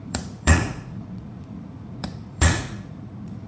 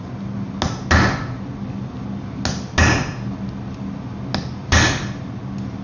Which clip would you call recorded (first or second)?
second